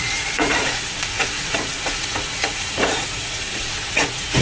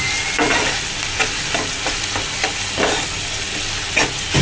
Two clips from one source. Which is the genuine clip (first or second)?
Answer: second